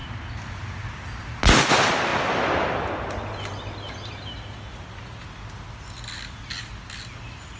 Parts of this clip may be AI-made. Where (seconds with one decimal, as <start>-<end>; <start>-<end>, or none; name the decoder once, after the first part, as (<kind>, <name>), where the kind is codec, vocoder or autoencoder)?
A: none